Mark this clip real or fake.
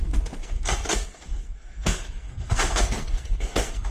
fake